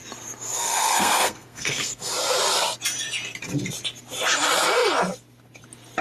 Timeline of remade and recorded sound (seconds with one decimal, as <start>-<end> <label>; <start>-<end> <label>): 0.0-0.5 recorded; 0.5-2.1 remade; 2.1-6.0 recorded